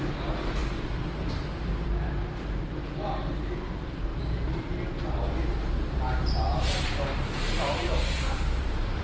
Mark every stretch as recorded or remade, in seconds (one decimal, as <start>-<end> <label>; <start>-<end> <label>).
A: 0.0-2.8 remade; 2.8-3.4 recorded; 3.4-9.0 remade